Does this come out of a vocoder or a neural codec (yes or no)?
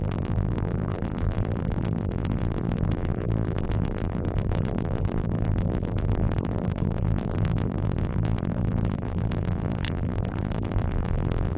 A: yes